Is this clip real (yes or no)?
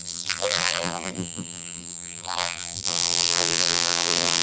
no